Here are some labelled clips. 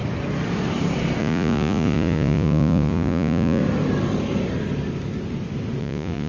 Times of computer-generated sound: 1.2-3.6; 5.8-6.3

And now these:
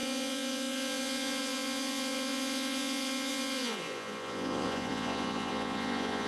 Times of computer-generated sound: 0.0-6.3

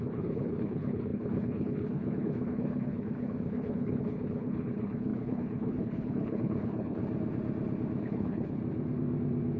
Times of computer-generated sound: 0.0-7.0; 8.0-8.6

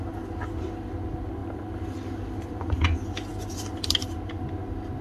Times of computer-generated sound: 1.4-2.7

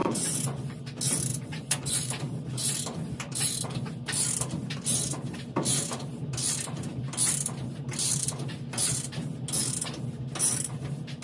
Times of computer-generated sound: 0.0-0.8; 1.3-2.1

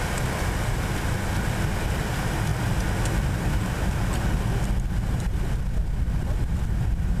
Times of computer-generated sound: none

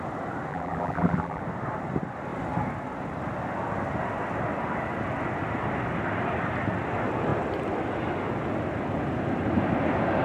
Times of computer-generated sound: 0.5-1.4